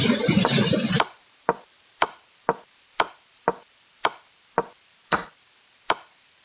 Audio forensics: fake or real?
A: fake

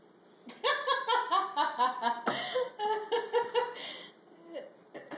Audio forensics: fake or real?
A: real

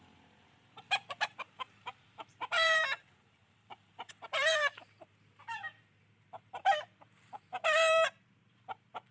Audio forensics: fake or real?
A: fake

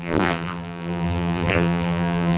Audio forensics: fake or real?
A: fake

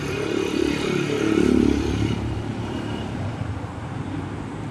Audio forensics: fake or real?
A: fake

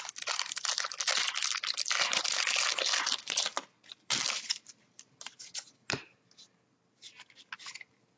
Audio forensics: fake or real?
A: real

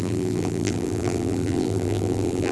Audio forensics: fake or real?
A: fake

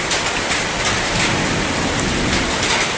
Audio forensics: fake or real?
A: fake